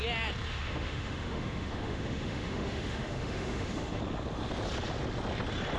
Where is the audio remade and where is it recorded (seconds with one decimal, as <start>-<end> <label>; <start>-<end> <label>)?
0.0-0.5 recorded; 0.5-4.0 remade; 4.0-5.8 recorded